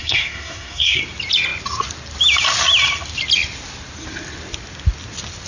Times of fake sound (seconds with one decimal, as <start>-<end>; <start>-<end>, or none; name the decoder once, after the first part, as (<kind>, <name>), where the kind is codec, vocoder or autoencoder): 0.0-1.0 (codec, SNAC)